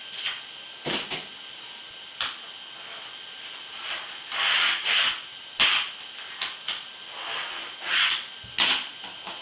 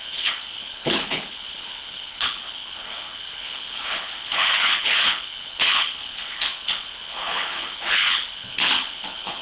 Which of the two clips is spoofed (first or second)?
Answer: second